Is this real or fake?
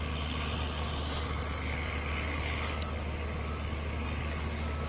real